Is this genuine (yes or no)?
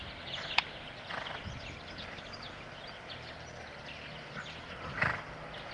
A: yes